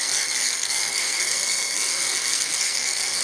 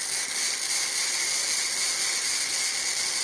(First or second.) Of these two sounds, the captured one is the second